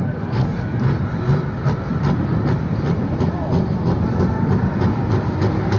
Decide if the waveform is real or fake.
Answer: real